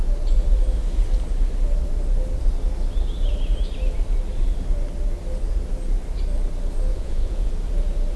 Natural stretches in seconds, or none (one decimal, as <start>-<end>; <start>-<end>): 0.0-6.9; 7.5-8.2